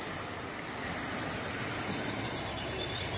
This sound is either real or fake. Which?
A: real